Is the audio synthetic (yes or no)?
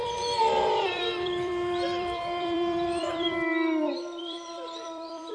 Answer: yes